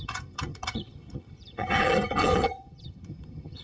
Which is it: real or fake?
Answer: fake